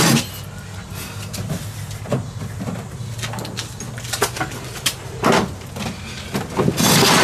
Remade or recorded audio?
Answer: recorded